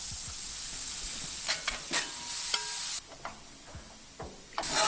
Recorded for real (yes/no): yes